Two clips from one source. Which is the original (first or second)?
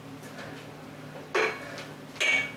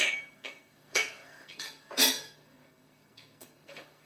first